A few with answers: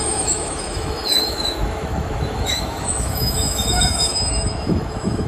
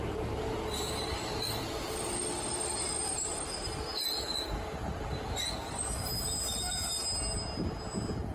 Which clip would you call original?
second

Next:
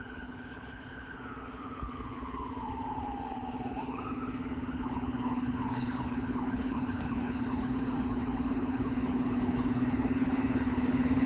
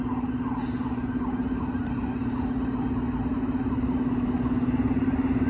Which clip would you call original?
second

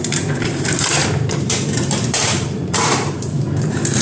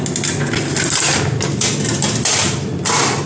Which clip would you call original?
second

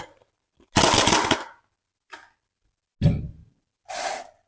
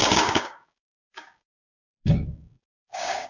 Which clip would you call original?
first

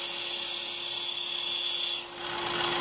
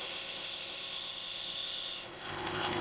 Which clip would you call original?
first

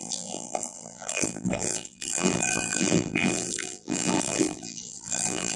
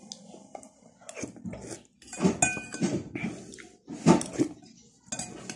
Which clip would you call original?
second